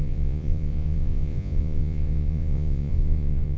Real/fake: fake